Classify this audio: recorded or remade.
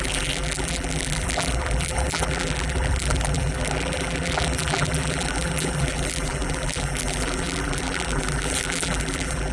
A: remade